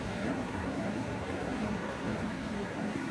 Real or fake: fake